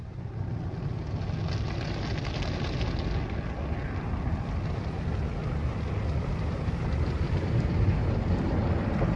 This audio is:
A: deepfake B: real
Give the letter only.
B